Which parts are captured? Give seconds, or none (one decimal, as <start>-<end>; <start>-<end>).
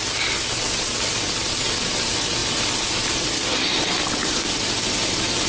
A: 0.0-5.5